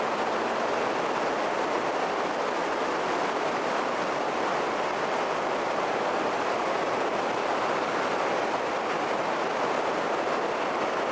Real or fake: real